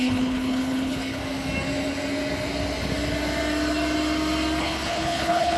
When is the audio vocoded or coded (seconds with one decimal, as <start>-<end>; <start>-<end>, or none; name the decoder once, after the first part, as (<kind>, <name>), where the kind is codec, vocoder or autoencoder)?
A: 0.0-1.2 (codec, HILCodec); 4.6-5.6